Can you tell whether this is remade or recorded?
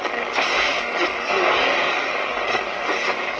remade